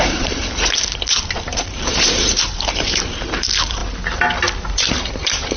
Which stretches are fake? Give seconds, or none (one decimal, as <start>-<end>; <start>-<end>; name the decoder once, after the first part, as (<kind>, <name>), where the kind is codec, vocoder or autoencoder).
0.0-0.4 (vocoder, BigVGAN v2); 1.5-3.8; 4.9-5.6